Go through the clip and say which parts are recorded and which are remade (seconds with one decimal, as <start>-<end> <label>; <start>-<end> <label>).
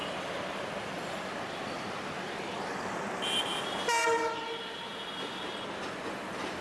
0.0-6.6 recorded